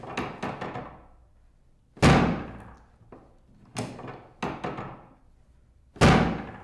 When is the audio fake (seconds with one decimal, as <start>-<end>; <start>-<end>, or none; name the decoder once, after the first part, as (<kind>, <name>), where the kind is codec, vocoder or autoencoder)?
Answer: none